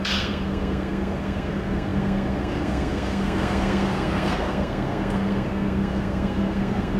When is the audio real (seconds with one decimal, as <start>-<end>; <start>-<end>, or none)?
none